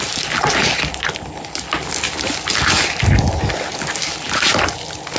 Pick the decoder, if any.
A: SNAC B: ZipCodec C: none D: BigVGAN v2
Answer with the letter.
C